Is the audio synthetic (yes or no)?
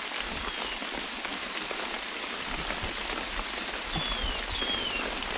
no